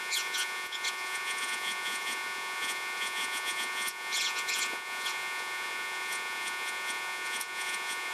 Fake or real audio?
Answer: fake